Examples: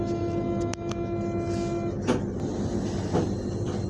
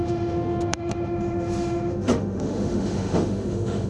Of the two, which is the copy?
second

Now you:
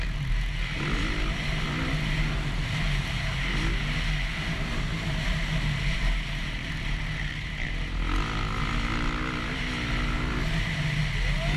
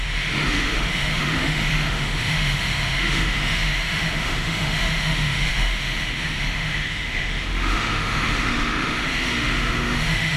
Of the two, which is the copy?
second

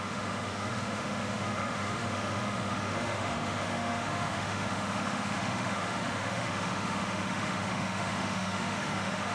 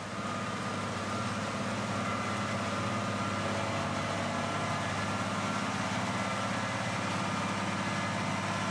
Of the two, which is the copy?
first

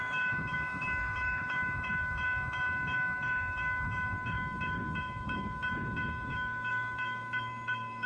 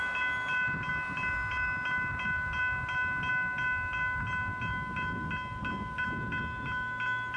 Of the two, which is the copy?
first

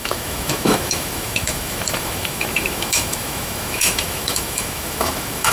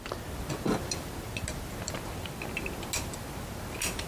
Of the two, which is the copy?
first